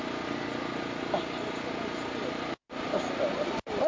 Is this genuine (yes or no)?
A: yes